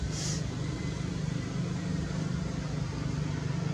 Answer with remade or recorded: recorded